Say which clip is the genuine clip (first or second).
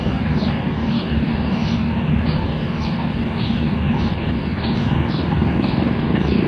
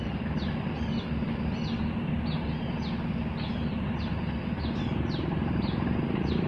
second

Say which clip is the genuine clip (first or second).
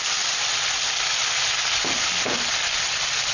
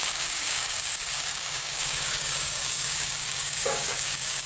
first